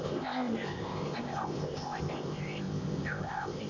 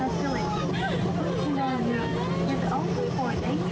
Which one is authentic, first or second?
second